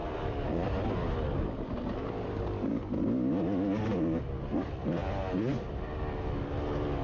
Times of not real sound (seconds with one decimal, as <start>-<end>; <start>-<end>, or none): none